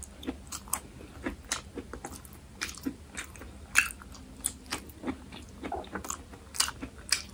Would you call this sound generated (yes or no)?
no